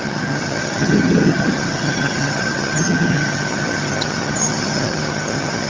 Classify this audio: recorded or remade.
remade